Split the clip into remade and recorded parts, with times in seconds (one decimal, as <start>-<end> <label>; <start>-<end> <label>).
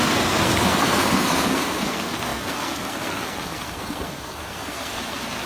0.0-5.5 remade